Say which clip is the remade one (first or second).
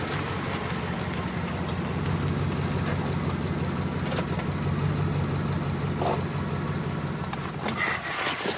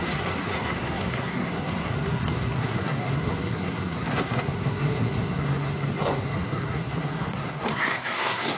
second